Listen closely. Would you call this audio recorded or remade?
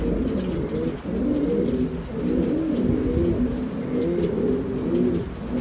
recorded